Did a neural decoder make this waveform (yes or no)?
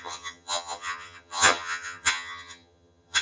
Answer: yes